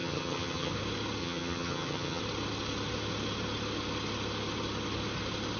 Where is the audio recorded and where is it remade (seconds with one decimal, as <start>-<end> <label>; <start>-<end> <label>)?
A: 0.0-0.7 remade; 0.7-1.2 recorded; 1.2-2.2 remade; 2.2-5.6 recorded